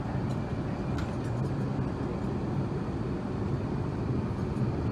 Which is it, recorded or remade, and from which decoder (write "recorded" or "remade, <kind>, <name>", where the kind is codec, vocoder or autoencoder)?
recorded